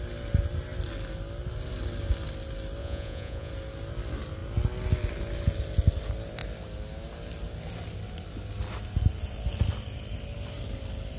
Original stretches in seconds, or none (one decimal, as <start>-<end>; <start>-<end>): 0.0-2.8; 3.5-11.2